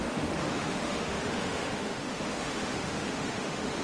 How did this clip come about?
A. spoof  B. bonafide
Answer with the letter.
A